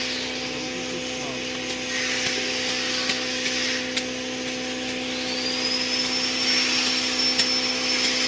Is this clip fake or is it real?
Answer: real